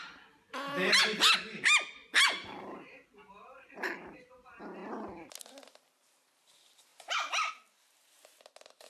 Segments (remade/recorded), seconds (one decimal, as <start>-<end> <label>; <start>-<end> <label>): 0.0-8.9 recorded